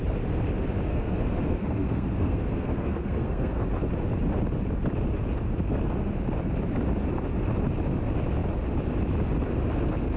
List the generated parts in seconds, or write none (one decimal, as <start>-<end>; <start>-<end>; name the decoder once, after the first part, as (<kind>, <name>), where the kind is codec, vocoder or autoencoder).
0.9-3.6 (codec, SNAC)